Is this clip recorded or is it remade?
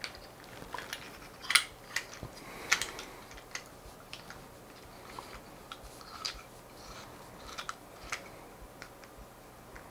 recorded